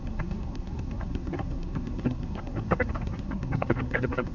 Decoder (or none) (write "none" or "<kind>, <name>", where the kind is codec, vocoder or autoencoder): codec, SNAC